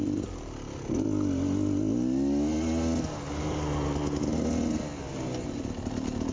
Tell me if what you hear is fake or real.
real